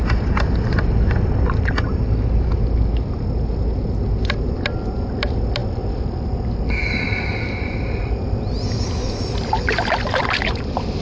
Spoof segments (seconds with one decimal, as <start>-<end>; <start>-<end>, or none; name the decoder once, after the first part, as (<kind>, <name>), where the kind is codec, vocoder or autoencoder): none